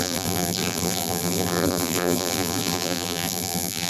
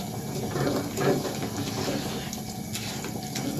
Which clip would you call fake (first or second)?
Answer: first